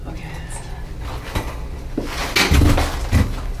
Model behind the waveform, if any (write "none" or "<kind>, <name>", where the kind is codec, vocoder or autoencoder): none